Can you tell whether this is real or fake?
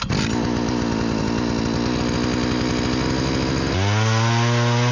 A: real